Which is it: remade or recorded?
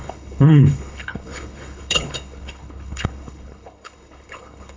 remade